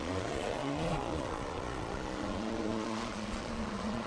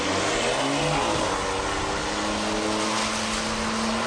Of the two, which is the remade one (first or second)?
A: first